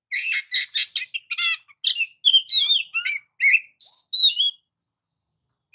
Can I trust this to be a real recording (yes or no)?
yes